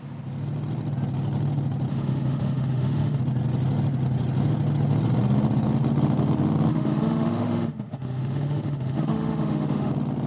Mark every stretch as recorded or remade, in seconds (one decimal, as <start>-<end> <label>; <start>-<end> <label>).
0.0-1.9 recorded; 1.9-3.2 remade; 3.2-6.7 recorded; 6.7-9.9 remade; 9.9-10.3 recorded

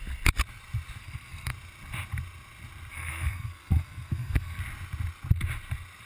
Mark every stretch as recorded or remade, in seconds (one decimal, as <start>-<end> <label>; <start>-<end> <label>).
0.0-1.0 recorded; 1.0-1.5 remade; 1.5-2.9 recorded; 2.9-4.6 remade; 4.6-6.1 recorded